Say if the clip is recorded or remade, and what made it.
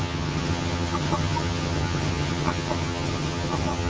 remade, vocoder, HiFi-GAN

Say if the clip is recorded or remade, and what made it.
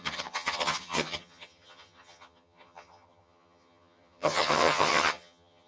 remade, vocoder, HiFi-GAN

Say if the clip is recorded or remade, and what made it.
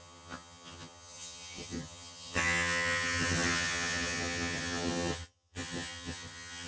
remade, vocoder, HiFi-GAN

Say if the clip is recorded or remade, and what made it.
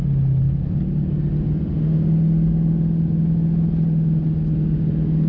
recorded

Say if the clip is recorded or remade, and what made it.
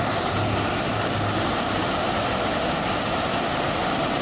recorded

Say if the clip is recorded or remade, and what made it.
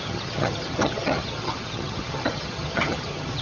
remade, vocoder, HiFi-GAN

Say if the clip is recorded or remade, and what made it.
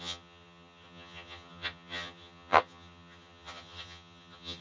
remade, vocoder, HiFi-GAN